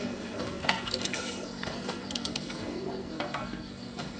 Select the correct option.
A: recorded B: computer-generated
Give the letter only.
B